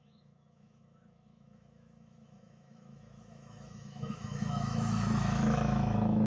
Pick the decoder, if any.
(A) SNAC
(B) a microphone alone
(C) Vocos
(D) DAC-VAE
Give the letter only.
D